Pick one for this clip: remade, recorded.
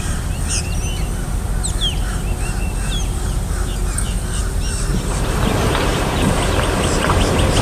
recorded